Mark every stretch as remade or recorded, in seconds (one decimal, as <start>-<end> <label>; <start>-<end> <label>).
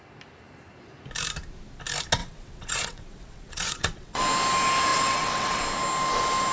0.0-2.2 recorded; 2.2-4.2 remade; 4.2-4.9 recorded; 4.9-5.6 remade; 5.6-6.5 recorded